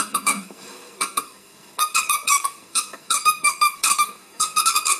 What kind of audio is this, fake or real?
fake